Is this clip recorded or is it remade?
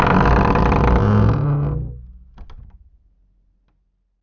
recorded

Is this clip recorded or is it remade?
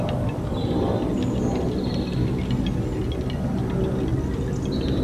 recorded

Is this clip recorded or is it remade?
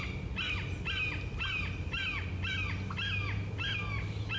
recorded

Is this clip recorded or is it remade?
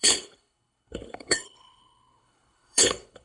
remade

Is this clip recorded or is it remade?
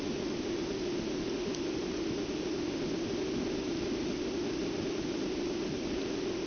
recorded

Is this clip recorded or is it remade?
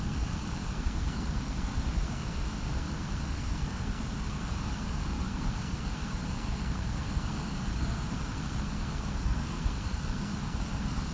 remade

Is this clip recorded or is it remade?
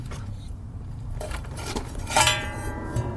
remade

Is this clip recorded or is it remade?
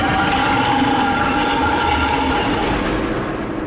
recorded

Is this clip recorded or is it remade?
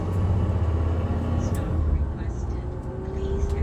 recorded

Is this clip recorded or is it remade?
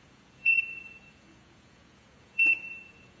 remade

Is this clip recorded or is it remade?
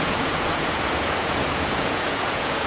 remade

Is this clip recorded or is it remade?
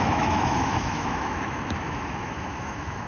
remade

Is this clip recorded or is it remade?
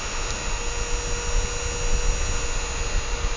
recorded